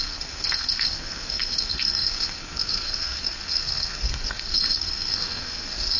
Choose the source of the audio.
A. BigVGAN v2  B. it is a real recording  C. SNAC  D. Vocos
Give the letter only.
C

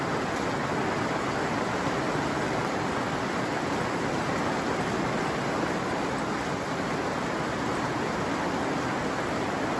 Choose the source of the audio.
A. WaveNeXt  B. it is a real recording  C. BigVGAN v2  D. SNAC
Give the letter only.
B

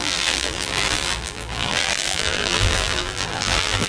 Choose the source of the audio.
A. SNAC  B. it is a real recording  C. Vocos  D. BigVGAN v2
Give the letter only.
D